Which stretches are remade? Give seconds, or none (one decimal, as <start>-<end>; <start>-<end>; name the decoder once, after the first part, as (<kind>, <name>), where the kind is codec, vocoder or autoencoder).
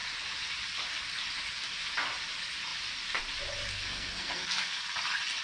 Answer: 3.7-4.8 (codec, SNAC)